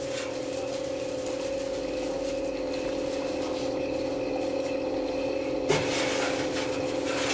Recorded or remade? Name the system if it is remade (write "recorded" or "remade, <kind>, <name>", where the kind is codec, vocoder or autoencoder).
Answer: recorded